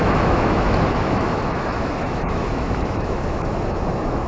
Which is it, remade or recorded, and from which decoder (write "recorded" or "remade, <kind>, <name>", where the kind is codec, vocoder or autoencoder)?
remade, autoencoder, DAC-VAE